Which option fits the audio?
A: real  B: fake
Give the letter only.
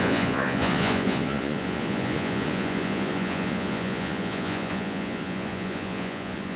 B